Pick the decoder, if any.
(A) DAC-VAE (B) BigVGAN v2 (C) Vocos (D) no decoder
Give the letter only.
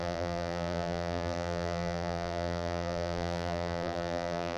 B